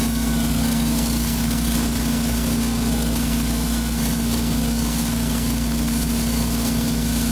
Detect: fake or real fake